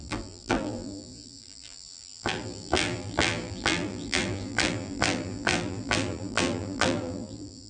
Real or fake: fake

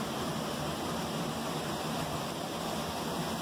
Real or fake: fake